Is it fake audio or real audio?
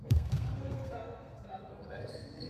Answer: fake